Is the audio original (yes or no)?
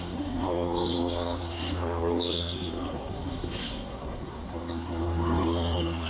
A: no